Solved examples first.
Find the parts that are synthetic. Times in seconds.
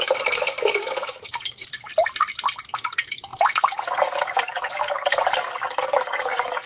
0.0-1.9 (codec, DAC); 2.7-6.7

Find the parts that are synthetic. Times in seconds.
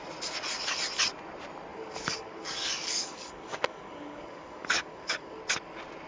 1.7-5.4 (codec, DAC)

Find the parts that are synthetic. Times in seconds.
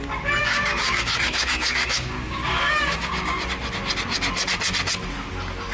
0.4-3.4 (codec, DAC)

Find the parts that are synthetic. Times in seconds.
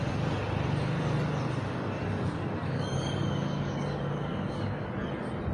1.6-4.9 (codec, DAC)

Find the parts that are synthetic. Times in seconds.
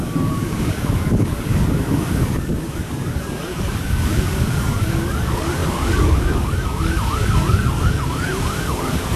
0.0-9.2 (codec, DAC)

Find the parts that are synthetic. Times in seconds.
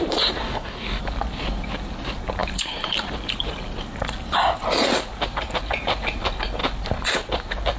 0.4-1.0 (codec, DAC)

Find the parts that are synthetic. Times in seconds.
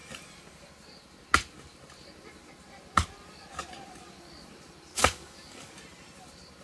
4.9-5.7 (codec, DAC)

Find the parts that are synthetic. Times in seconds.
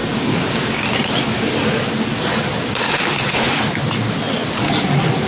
0.0-0.7 (codec, DAC)